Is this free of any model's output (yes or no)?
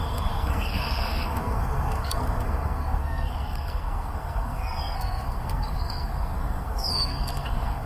no